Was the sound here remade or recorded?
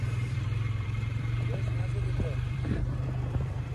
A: remade